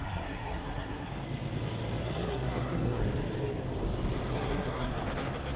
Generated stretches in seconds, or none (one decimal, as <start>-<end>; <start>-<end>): 0.0-1.1; 2.0-3.0; 4.3-4.9